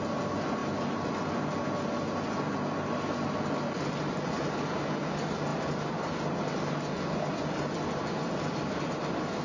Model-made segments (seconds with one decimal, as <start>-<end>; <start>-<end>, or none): none